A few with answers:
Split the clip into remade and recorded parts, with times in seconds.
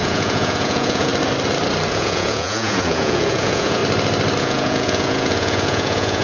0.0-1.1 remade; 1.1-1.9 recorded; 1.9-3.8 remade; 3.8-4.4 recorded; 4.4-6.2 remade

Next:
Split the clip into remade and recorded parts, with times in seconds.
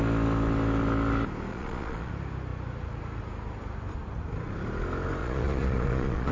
0.0-1.5 recorded; 1.5-2.1 remade; 2.1-5.2 recorded; 5.2-6.3 remade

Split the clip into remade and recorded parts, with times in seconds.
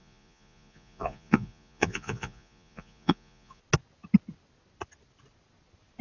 0.0-3.6 remade; 3.6-6.0 recorded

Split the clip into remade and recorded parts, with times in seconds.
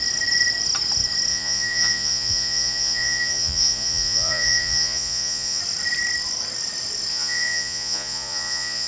0.0-1.3 recorded; 1.3-5.6 remade; 5.6-7.1 recorded; 7.1-8.9 remade